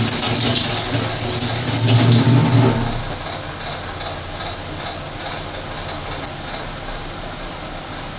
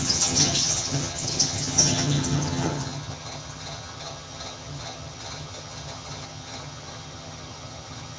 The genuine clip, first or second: first